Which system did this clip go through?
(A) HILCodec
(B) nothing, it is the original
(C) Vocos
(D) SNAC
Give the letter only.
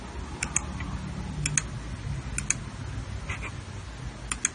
B